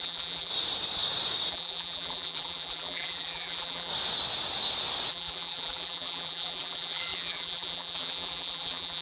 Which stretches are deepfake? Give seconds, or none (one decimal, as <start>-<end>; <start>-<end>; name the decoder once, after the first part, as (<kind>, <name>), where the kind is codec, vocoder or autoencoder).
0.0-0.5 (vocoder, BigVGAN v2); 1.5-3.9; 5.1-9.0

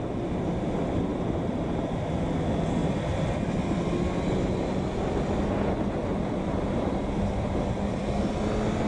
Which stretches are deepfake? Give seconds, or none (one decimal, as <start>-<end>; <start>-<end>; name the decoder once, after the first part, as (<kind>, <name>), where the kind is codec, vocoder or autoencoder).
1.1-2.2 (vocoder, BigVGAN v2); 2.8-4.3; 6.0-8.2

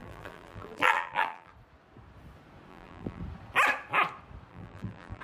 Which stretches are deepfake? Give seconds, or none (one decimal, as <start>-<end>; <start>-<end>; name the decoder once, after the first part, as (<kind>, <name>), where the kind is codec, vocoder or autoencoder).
0.0-1.5 (vocoder, BigVGAN v2); 2.7-3.2; 4.5-5.2